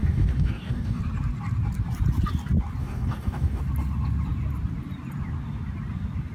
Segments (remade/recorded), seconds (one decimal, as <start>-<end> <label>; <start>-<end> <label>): 0.0-1.0 remade; 1.0-2.8 recorded; 2.8-3.6 remade; 3.6-6.3 recorded